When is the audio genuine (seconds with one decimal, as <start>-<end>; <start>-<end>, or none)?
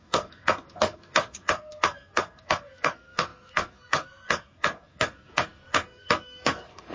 none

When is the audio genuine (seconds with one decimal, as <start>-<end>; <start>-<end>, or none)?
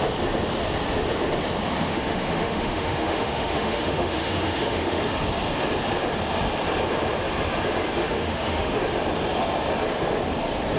0.0-1.8; 5.0-8.0; 8.8-10.8